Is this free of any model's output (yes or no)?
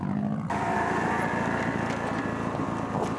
yes